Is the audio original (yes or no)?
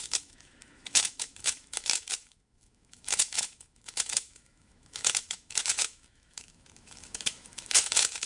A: no